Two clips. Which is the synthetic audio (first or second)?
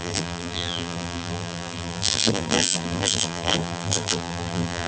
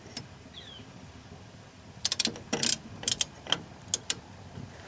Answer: first